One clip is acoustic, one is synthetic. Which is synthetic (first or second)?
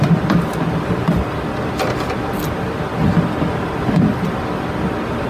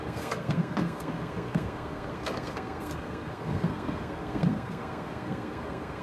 second